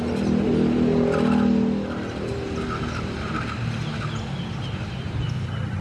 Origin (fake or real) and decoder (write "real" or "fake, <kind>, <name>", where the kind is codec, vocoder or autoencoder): real